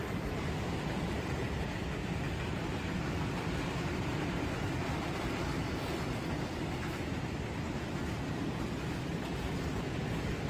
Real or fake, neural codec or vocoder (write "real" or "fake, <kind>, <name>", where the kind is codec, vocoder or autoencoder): real